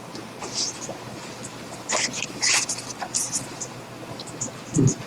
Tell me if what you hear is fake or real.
real